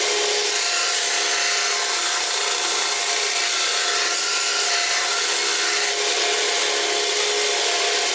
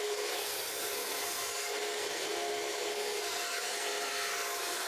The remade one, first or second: second